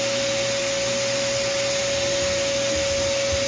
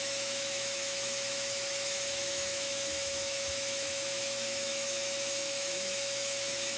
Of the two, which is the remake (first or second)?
second